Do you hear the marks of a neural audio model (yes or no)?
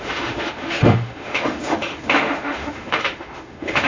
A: yes